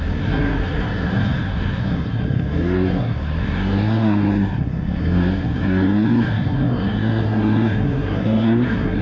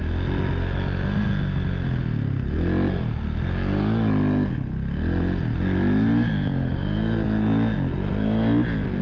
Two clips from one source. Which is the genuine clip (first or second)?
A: second